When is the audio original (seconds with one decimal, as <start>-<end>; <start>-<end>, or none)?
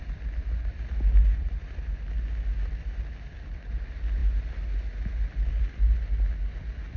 0.0-7.0